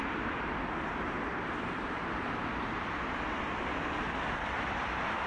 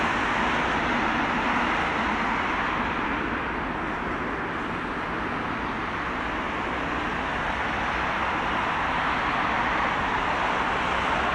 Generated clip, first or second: first